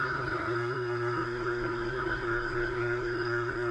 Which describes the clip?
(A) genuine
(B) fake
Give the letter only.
B